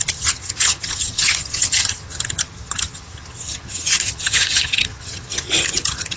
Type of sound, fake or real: fake